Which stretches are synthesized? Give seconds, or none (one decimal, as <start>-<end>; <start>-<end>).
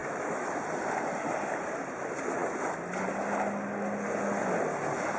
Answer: 0.0-0.5